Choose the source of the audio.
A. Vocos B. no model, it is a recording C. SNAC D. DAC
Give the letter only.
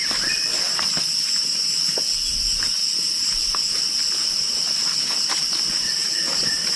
B